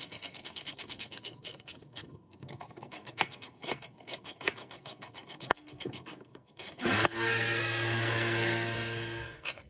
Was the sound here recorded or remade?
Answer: remade